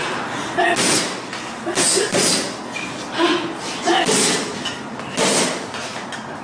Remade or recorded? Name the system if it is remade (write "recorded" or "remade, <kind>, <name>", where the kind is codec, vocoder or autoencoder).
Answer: recorded